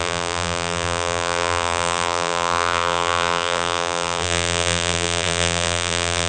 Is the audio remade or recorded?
remade